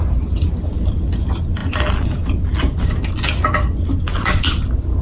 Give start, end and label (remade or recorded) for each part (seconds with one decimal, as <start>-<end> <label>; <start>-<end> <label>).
0.0-5.0 recorded